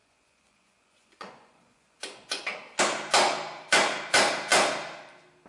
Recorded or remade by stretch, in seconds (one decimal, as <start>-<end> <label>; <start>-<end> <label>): 0.0-2.4 remade; 2.4-5.5 recorded